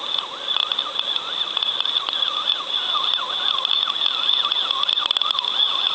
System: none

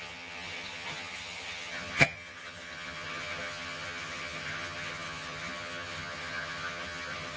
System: vocoder, HiFi-GAN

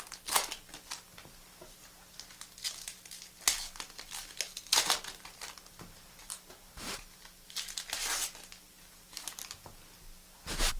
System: none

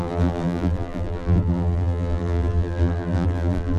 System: vocoder, BigVGAN v2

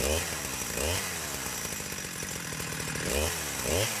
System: none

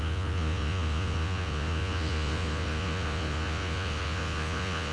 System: vocoder, Vocos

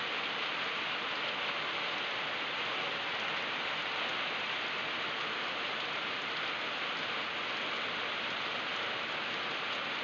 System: none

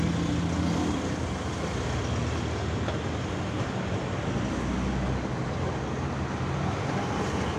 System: none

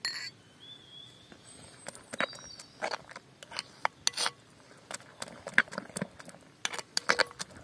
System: none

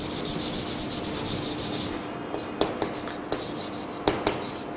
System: none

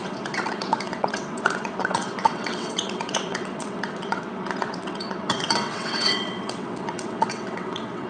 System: vocoder, WaveNeXt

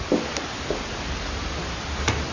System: none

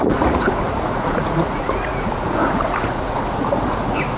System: vocoder, Vocos